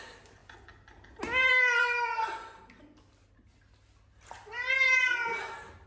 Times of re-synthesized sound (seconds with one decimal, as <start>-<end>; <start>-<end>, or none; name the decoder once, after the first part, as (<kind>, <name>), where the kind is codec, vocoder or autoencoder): none